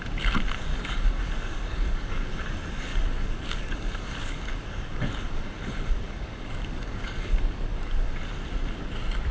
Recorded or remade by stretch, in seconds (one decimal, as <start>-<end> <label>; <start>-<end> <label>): 0.0-0.7 recorded; 0.7-2.4 remade; 2.4-2.9 recorded; 2.9-8.1 remade; 8.1-9.3 recorded